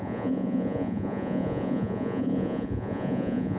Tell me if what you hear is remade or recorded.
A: remade